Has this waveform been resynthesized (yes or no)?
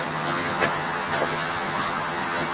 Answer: yes